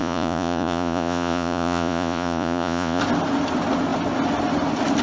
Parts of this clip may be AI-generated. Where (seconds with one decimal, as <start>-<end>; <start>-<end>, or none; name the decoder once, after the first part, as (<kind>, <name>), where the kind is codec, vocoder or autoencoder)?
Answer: 0.0-3.0 (vocoder, Vocos)